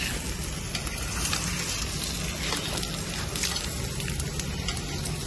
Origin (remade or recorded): recorded